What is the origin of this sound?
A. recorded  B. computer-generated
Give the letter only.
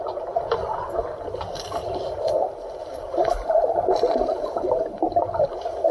A